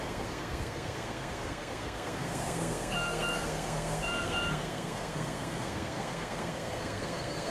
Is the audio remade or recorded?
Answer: remade